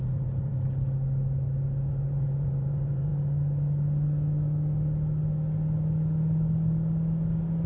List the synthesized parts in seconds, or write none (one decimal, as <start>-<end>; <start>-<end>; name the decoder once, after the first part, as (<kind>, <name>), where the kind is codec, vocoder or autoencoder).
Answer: 0.0-0.5 (vocoder, Vocos); 1.9-3.1